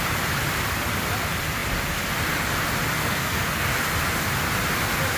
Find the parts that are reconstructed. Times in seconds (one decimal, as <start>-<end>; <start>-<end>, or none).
3.0-3.7